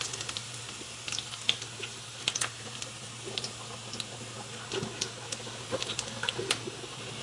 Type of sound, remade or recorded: recorded